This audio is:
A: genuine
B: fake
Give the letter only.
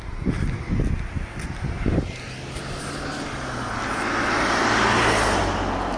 A